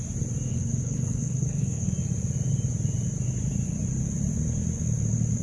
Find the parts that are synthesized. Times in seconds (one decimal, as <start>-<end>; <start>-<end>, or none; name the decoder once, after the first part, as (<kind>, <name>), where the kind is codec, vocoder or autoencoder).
0.5-1.9 (codec, HILCodec)